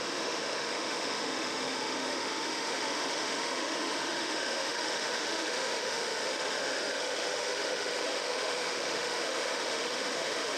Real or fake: fake